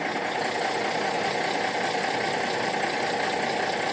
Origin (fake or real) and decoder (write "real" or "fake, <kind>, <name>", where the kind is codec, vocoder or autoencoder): real